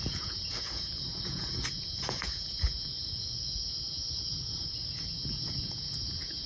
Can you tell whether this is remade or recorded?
remade